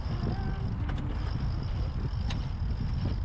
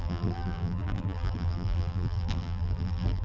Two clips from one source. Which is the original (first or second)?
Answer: first